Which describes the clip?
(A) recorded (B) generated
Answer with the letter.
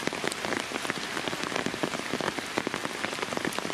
A